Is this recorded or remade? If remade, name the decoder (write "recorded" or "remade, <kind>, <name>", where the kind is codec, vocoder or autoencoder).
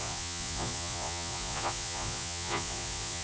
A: remade, vocoder, Vocos